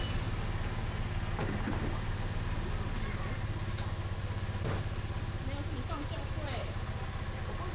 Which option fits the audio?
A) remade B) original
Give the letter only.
B